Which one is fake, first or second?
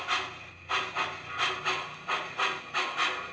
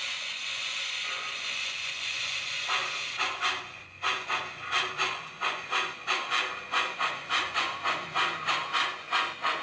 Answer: second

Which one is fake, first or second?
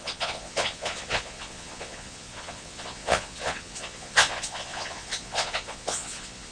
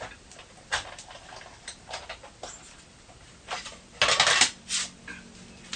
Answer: first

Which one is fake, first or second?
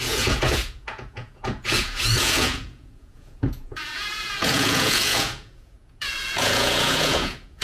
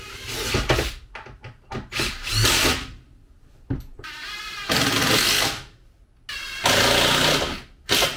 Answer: first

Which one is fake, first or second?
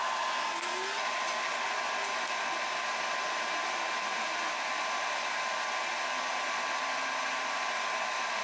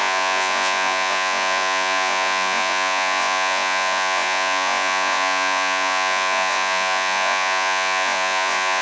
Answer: second